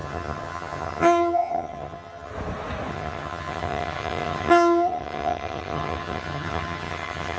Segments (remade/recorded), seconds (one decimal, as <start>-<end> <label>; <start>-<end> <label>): 0.0-2.3 remade; 2.3-2.9 recorded; 2.9-7.4 remade